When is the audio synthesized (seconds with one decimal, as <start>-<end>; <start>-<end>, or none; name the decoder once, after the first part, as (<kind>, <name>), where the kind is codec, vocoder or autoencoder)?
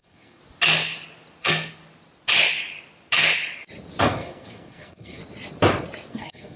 0.0-0.4 (codec, SNAC); 1.4-1.8; 4.0-5.2; 6.1-6.6